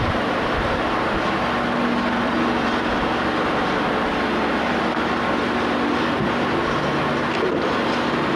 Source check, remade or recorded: recorded